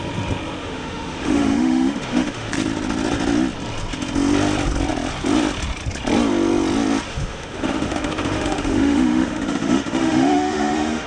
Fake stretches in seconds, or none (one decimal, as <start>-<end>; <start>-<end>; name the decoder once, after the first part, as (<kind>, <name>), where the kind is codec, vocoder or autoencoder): 0.6-2.5 (autoencoder, DAC-VAE); 7.1-11.1